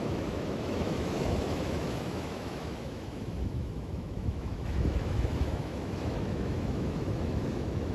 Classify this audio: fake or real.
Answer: fake